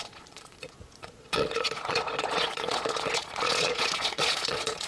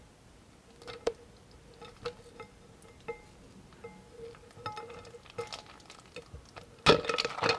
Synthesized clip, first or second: first